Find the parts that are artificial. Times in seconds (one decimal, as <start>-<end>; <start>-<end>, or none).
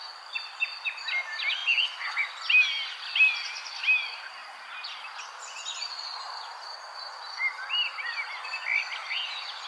none